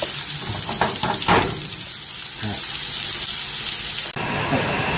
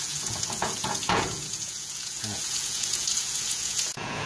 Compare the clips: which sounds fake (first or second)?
second